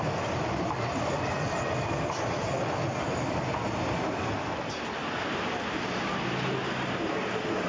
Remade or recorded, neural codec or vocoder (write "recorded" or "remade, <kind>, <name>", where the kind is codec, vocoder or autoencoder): recorded